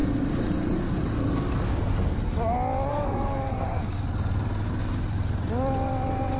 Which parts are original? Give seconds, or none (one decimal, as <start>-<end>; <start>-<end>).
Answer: 0.0-2.9; 3.8-6.4